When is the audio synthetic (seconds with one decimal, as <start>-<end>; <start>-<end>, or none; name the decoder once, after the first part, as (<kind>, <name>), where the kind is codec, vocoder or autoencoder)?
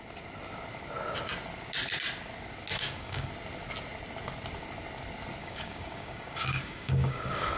2.7-3.3 (codec, DAC); 5.4-7.6